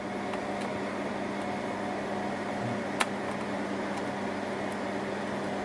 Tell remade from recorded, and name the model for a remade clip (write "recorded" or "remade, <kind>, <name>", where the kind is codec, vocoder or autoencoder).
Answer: recorded